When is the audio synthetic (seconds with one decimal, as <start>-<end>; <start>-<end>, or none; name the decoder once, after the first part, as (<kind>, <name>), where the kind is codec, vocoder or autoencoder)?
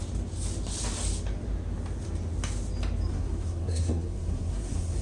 3.1-5.0 (codec, SNAC)